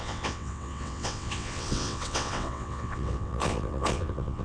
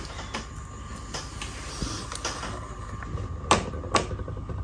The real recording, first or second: second